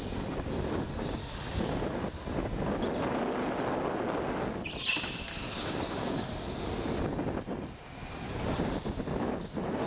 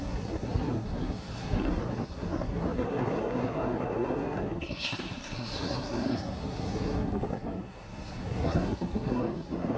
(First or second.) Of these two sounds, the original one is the first